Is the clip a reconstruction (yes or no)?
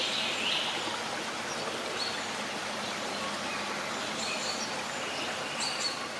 no